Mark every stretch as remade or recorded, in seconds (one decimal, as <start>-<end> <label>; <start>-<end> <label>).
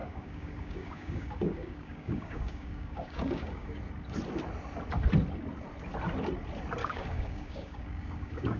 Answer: 0.0-3.8 remade; 3.8-6.8 recorded; 6.8-8.6 remade